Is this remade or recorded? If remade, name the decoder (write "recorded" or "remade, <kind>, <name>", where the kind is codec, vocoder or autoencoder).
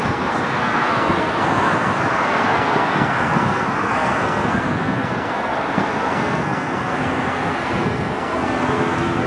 remade, codec, SNAC